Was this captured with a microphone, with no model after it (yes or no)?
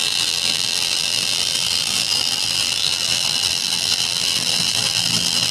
no